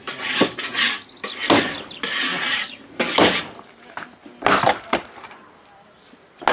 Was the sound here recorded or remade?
recorded